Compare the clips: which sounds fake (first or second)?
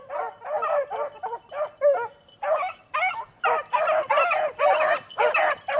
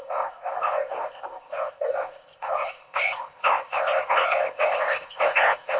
second